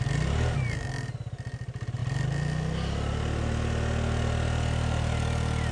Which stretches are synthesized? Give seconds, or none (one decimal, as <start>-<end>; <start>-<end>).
none